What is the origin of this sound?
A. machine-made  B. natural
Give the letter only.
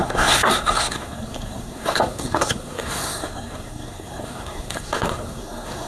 A